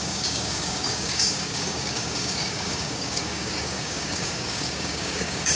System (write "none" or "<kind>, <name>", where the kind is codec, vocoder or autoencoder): codec, DAC